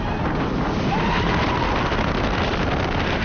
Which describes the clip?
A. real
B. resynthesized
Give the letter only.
A